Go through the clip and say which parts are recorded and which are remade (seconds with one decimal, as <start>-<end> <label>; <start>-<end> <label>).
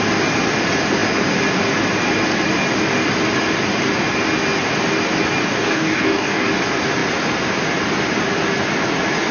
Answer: 0.0-5.5 recorded; 5.5-6.5 remade; 6.5-9.3 recorded